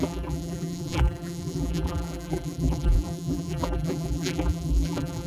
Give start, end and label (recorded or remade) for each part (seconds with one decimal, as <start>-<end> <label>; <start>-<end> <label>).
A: 0.0-5.3 remade